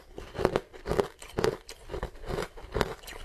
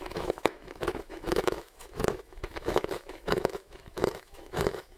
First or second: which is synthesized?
second